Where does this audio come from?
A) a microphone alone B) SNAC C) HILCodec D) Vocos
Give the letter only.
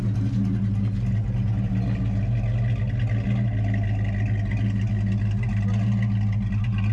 A